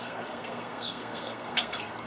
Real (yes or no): no